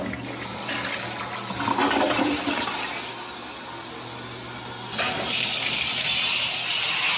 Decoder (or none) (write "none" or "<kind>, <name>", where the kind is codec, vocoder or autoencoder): none